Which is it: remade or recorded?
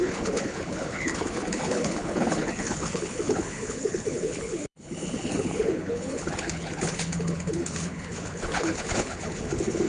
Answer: remade